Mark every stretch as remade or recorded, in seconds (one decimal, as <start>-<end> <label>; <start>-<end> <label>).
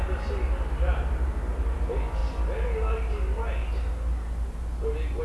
0.0-5.2 recorded